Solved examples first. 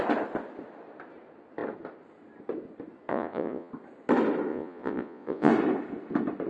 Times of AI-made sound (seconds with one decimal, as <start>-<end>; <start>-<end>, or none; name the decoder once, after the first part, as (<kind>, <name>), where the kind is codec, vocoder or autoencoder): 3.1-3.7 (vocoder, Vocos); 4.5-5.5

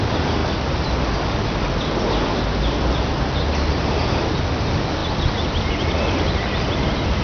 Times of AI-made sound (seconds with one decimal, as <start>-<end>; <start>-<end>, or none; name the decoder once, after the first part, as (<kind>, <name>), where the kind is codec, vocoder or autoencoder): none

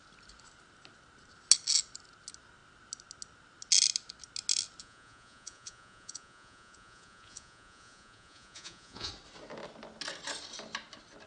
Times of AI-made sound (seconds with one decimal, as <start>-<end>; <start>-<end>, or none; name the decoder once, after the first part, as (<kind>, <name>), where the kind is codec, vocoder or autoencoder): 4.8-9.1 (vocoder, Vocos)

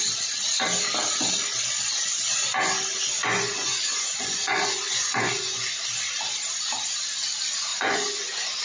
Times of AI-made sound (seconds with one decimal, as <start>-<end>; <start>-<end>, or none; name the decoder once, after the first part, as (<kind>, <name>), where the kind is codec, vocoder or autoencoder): 2.9-5.8 (vocoder, Vocos); 7.7-8.6

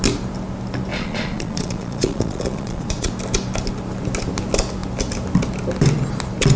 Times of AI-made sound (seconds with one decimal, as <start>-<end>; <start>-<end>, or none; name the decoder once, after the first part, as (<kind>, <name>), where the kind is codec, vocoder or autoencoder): 0.9-3.1 (vocoder, Vocos)